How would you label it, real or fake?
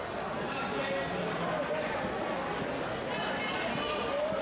real